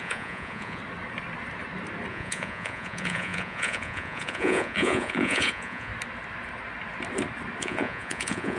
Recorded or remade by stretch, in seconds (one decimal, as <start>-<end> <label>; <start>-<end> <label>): 0.0-0.8 remade; 0.8-2.1 recorded; 2.1-5.9 remade; 5.9-7.6 recorded; 7.6-8.6 remade